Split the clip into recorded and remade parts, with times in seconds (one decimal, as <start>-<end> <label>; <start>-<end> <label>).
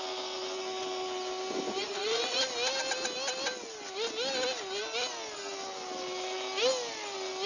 0.0-1.8 recorded; 1.8-2.4 remade; 2.4-7.5 recorded